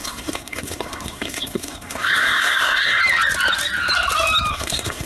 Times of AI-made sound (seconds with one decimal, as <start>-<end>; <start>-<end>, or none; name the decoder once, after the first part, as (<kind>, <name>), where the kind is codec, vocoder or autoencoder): 0.0-3.0 (codec, SNAC); 4.5-5.1

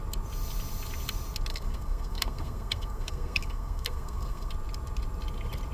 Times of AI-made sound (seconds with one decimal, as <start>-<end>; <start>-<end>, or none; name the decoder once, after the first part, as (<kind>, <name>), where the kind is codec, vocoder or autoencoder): 1.5-4.5 (codec, SNAC)

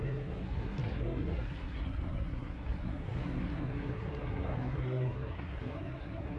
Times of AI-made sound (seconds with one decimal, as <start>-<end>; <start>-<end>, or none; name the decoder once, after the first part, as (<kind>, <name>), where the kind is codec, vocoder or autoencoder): 0.0-6.4 (codec, SNAC)

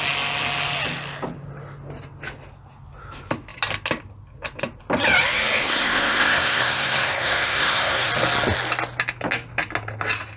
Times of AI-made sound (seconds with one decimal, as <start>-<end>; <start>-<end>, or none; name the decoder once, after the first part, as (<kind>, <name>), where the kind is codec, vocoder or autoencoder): 5.6-8.1 (codec, SNAC)

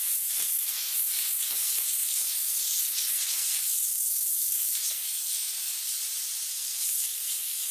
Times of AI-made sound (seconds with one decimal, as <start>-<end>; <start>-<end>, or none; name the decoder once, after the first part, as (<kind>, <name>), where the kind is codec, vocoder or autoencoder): 0.0-5.9 (codec, SNAC); 6.5-7.7